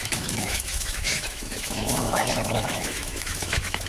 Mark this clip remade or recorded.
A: remade